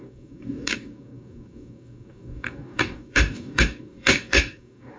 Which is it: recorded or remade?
remade